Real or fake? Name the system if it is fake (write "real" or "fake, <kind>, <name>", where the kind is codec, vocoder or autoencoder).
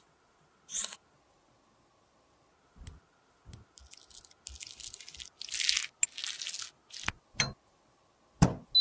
real